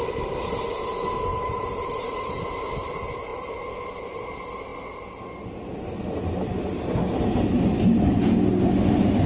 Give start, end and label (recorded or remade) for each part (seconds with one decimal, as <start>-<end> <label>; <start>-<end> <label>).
0.0-1.3 recorded; 1.3-2.4 remade; 2.4-9.3 recorded